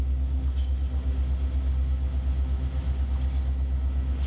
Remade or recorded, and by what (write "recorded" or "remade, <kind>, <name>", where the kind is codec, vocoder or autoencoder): recorded